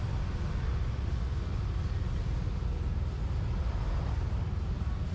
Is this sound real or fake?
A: real